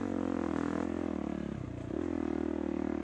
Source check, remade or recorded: recorded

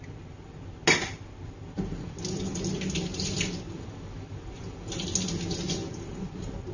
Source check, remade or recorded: recorded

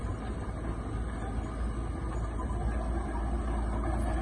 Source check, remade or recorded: recorded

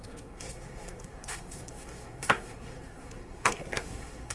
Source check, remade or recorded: remade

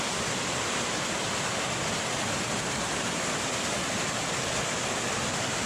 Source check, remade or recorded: recorded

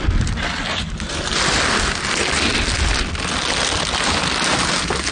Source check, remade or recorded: recorded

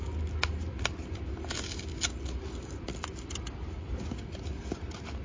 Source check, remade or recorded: recorded